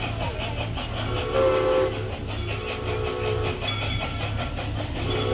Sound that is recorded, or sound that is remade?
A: recorded